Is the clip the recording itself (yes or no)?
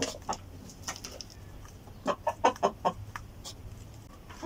yes